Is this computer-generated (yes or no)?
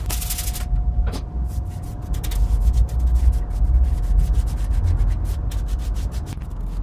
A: no